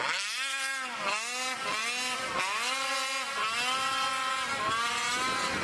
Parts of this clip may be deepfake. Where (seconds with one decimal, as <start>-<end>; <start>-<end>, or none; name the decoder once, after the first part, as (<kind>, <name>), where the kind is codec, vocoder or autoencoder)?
none